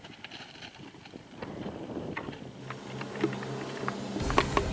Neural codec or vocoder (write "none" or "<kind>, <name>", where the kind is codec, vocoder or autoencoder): none